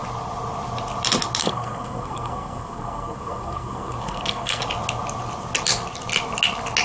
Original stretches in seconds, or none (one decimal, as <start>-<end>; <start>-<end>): 0.0-1.4; 4.6-6.8